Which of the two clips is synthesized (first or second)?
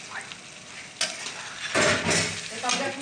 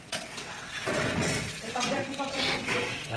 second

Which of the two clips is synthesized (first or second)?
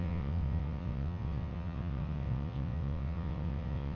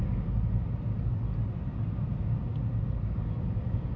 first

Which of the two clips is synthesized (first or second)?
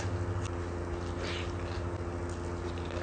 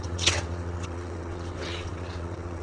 second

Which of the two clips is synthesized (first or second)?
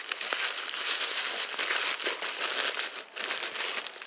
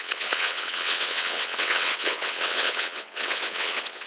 second